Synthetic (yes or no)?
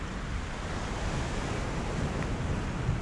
no